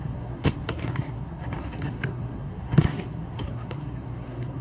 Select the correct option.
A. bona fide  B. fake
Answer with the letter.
B